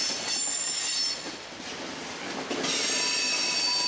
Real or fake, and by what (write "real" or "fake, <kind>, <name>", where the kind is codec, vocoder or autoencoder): real